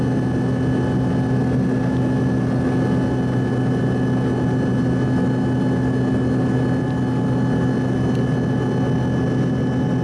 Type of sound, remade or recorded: recorded